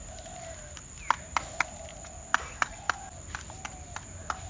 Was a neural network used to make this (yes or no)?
no